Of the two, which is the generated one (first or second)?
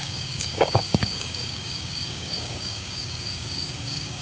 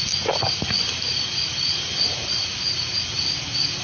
first